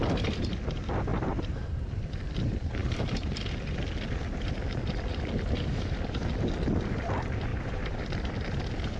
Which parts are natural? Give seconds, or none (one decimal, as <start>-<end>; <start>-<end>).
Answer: 0.0-1.1; 2.0-2.8; 3.4-5.1; 5.9-7.5; 8.3-9.0